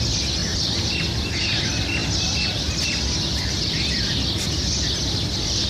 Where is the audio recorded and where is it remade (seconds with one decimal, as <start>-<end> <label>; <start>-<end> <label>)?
0.0-0.5 recorded; 0.5-1.6 remade; 1.6-5.7 recorded

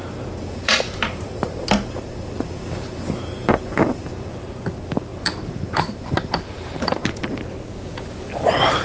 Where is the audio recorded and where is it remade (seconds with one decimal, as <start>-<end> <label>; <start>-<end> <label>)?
0.0-1.6 remade; 1.6-5.1 recorded; 5.1-7.2 remade; 7.2-8.8 recorded

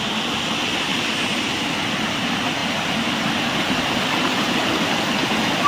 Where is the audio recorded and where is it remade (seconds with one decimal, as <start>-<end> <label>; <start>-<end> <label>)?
0.0-0.9 recorded; 0.9-1.6 remade; 1.6-5.7 recorded

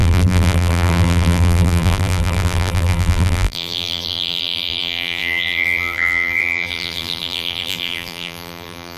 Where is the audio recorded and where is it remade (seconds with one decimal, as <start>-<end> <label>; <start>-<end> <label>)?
0.0-9.0 remade

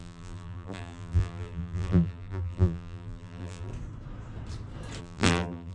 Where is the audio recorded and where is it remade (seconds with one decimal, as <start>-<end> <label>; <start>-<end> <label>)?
0.0-3.7 remade; 3.7-5.0 recorded; 5.0-5.7 remade

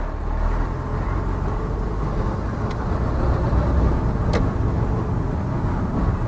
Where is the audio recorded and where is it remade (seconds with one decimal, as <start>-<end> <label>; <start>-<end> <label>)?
0.0-6.3 recorded

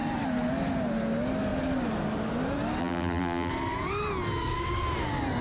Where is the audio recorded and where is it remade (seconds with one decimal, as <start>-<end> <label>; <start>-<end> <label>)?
0.0-2.8 recorded; 2.8-3.5 remade; 3.5-5.4 recorded